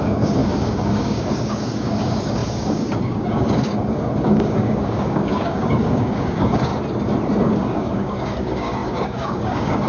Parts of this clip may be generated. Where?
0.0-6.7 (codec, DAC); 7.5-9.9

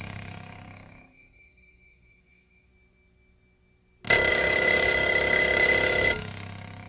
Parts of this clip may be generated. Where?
0.0-2.7 (codec, DAC); 4.3-6.9

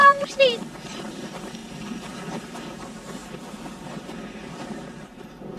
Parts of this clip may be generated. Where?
0.0-3.2 (vocoder, BigVGAN v2); 3.8-5.6

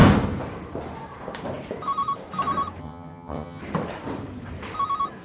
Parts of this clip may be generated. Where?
2.8-3.6 (vocoder, HiFi-GAN)

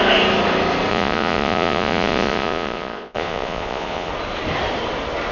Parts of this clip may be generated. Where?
0.9-4.1 (vocoder, Vocos)

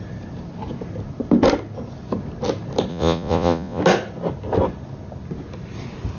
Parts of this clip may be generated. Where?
2.9-3.8 (vocoder, Vocos)

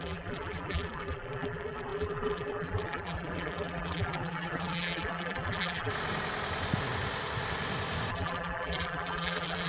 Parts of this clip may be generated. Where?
0.0-5.9 (vocoder, BigVGAN v2); 8.1-9.7